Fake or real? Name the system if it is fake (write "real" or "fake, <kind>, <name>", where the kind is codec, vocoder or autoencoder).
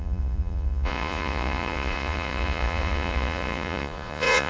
fake, vocoder, Vocos